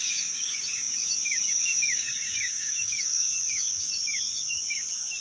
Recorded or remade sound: remade